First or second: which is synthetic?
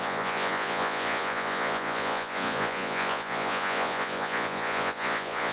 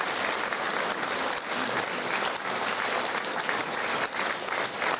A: first